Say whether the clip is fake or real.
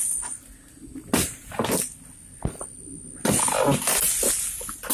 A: real